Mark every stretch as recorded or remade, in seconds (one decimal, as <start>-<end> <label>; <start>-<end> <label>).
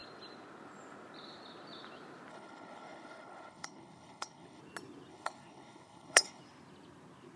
0.0-2.3 recorded; 2.3-4.6 remade; 4.6-5.1 recorded; 5.1-6.4 remade; 6.4-7.4 recorded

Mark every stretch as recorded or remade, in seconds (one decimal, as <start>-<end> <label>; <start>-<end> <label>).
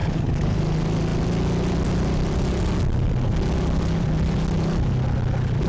0.0-0.6 remade; 0.6-5.7 recorded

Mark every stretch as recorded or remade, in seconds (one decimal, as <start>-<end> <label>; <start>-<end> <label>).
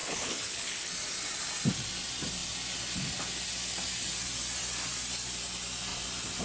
0.0-0.9 remade; 0.9-6.4 recorded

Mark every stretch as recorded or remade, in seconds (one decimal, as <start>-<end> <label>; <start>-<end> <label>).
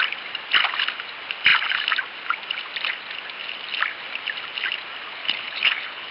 0.0-5.2 recorded; 5.2-6.1 remade